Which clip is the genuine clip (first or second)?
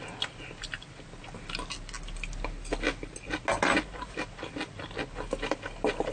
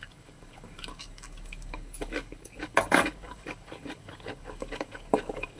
first